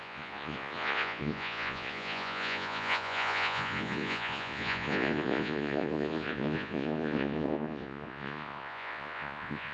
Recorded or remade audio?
remade